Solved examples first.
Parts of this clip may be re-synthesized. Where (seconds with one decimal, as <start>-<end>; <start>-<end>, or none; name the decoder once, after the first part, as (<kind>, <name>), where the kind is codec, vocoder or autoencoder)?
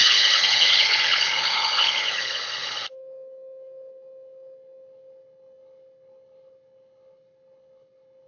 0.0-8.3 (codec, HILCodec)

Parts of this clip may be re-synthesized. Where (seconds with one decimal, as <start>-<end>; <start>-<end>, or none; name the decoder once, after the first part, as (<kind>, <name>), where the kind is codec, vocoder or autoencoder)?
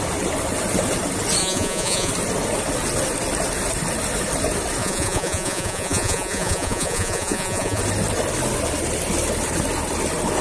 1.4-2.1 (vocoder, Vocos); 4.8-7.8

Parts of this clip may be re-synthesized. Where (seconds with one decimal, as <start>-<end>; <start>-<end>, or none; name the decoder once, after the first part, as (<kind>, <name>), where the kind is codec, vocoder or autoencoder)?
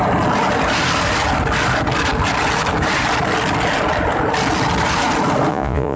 5.5-6.0 (vocoder, Vocos)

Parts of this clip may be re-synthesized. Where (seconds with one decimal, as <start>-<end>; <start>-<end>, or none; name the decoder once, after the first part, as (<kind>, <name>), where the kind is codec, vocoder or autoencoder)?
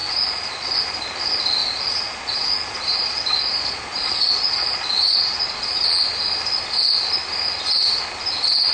0.0-0.8 (vocoder, Vocos); 1.6-6.0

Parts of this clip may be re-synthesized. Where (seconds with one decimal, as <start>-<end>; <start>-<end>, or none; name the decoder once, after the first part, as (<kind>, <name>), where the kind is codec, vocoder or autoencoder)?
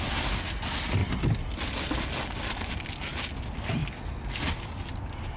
1.0-3.3 (vocoder, BigVGAN v2)